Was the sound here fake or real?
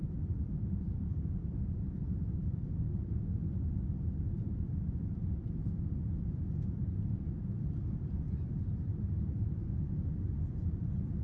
fake